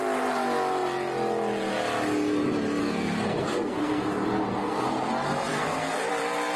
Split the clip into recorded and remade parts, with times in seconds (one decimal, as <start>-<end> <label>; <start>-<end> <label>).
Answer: 0.0-2.8 recorded; 2.8-4.0 remade; 4.0-4.5 recorded; 4.5-5.1 remade; 5.1-5.5 recorded; 5.5-6.1 remade; 6.1-6.6 recorded